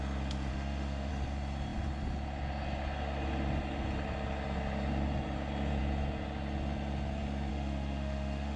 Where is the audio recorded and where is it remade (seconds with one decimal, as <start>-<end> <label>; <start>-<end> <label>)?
0.0-0.5 recorded; 0.5-1.1 remade; 1.1-7.5 recorded; 7.5-8.6 remade